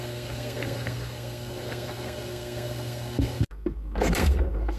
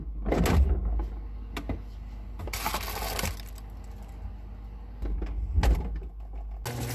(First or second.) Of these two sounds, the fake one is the first